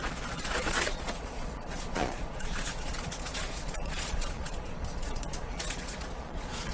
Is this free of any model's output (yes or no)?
no